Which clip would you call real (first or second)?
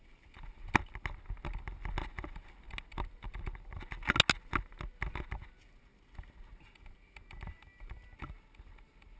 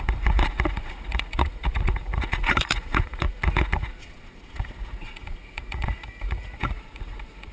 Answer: first